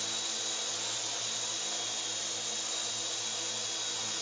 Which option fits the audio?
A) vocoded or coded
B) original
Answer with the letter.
B